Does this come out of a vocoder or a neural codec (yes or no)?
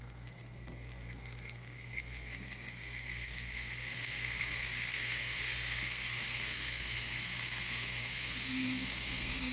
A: yes